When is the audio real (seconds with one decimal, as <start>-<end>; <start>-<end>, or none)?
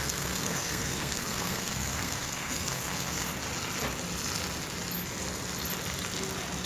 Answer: 3.3-6.7